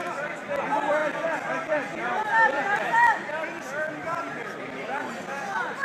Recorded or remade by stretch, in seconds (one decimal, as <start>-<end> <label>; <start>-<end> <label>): 0.0-5.8 recorded